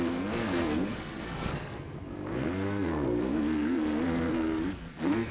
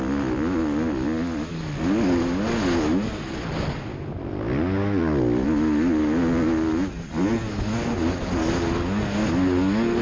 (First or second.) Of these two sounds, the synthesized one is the first